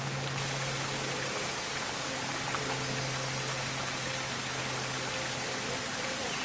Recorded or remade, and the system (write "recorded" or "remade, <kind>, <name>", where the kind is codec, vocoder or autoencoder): recorded